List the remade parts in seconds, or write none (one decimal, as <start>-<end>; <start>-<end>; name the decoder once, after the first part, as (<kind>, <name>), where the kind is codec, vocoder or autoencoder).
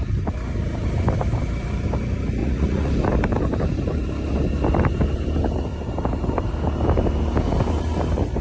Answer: 2.4-2.9 (vocoder, Vocos)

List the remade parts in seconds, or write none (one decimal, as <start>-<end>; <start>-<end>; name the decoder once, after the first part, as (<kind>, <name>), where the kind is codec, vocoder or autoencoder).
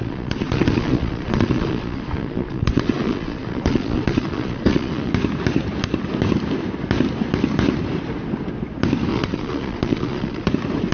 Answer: 0.0-5.1 (vocoder, Vocos); 9.1-10.5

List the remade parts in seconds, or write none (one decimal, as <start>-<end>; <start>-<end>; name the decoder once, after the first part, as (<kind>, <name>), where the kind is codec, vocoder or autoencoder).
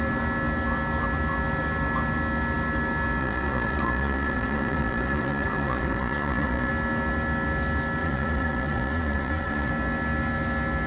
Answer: 3.2-6.7 (vocoder, Vocos); 8.0-9.7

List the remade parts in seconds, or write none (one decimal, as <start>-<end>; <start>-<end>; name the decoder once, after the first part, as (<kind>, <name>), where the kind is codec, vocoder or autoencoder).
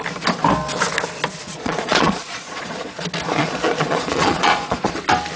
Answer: 1.4-3.0 (vocoder, Vocos); 3.4-5.0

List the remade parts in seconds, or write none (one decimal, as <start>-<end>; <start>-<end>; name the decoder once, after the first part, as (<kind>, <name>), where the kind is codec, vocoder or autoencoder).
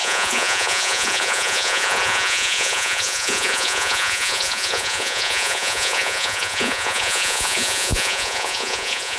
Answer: 0.0-9.2 (vocoder, Vocos)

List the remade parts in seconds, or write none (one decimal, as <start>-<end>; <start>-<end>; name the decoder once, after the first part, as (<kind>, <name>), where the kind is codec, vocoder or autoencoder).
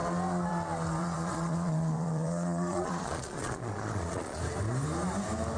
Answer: 1.0-4.4 (vocoder, Vocos)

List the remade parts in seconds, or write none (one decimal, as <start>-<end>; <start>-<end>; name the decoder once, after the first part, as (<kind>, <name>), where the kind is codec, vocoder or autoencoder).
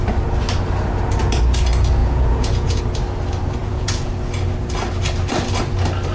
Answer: 2.0-2.8 (vocoder, Vocos); 3.6-4.1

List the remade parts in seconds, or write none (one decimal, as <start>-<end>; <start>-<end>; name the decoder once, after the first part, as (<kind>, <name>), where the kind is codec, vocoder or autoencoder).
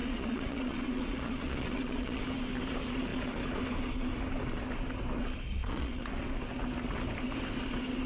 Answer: 0.0-2.2 (vocoder, Vocos); 5.5-6.2